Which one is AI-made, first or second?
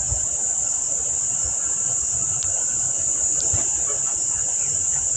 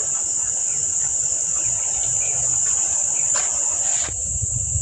first